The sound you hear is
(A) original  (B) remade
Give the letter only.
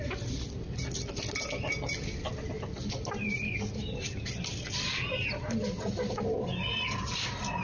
A